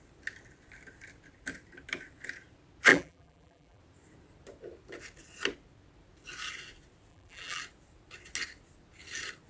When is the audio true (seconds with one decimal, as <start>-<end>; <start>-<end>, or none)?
0.0-2.9; 3.8-7.1; 7.6-9.5